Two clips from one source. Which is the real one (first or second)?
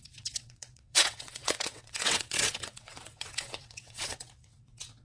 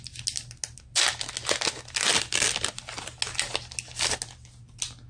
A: second